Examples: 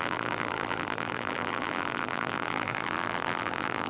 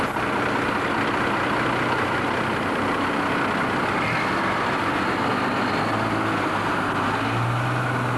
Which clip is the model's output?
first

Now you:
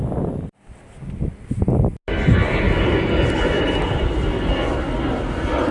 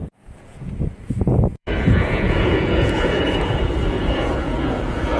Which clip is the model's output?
second